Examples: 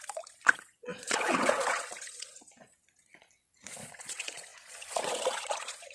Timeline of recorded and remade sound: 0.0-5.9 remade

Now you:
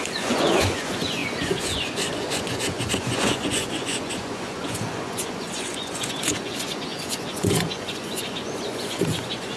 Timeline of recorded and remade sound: 0.0-9.6 remade

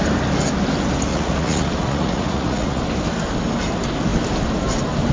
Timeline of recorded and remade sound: 0.0-1.1 recorded; 1.1-2.8 remade; 2.8-5.1 recorded

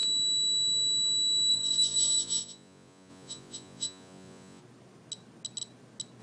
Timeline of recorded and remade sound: 0.0-1.5 recorded; 1.5-4.6 remade; 4.6-6.2 recorded

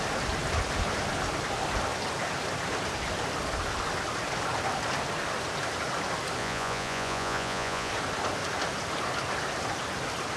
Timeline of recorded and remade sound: 0.0-6.4 recorded; 6.4-7.9 remade; 7.9-10.4 recorded

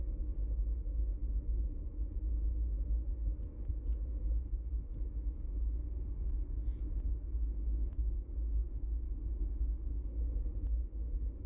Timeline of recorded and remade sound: 0.0-11.5 recorded

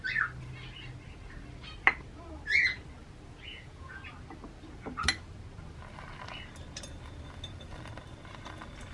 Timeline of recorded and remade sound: 0.0-3.5 recorded; 3.5-4.0 remade; 4.0-8.9 recorded

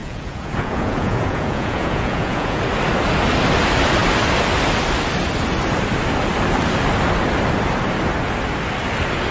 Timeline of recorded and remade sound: 0.0-2.6 remade; 2.6-9.3 recorded